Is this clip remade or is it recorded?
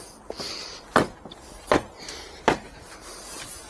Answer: recorded